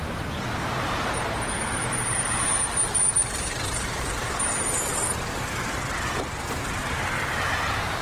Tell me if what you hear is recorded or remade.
remade